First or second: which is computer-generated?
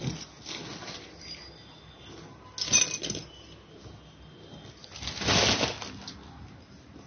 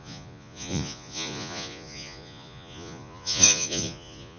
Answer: second